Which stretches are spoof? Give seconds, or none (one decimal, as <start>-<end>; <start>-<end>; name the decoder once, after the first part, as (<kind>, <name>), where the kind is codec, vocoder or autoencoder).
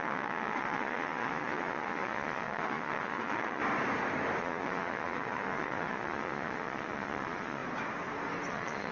0.0-3.6 (vocoder, Vocos); 4.4-7.6; 8.5-8.9